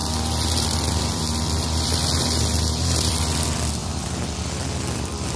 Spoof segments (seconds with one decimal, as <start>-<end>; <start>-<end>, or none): 0.0-5.4